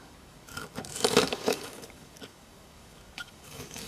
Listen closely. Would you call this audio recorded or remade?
remade